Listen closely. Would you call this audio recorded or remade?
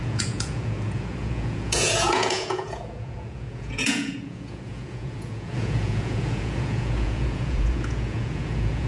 remade